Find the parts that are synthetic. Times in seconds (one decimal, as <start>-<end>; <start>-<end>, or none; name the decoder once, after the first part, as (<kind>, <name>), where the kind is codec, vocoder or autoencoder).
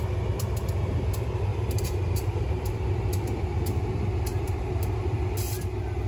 1.5-2.9 (vocoder, BigVGAN v2); 4.3-5.0